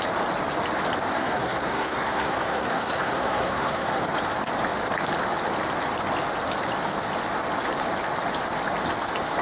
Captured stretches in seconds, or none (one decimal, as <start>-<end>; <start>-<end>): 0.0-1.1; 4.0-9.4